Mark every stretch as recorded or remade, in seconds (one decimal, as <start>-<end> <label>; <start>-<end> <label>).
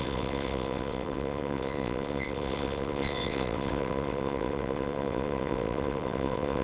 0.0-6.6 remade